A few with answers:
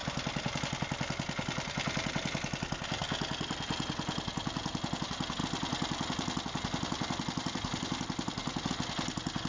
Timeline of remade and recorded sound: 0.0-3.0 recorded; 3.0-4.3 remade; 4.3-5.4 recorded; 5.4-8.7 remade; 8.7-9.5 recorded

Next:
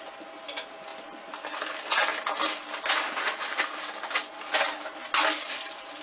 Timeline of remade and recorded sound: 0.0-6.0 recorded

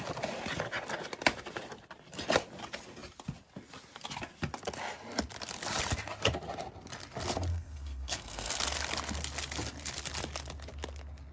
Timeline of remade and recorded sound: 0.0-7.5 recorded; 7.5-8.5 remade; 8.5-11.3 recorded